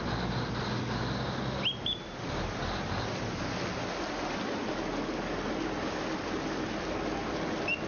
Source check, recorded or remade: recorded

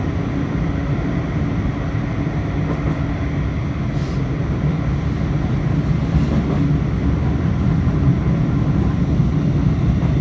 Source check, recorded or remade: recorded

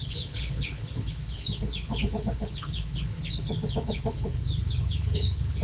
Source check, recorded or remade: remade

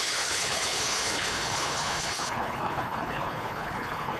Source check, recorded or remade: remade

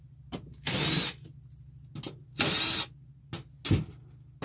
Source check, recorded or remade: recorded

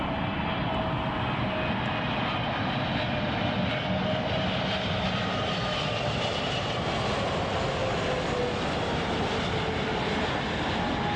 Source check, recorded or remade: recorded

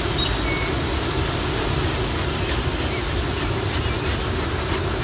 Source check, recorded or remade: recorded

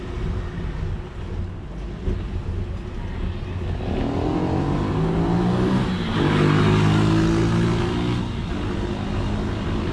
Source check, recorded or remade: recorded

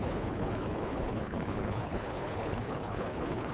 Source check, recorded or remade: remade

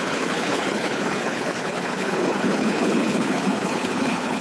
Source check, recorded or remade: remade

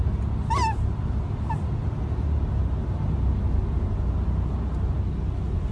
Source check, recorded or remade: recorded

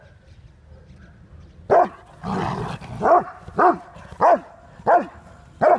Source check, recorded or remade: recorded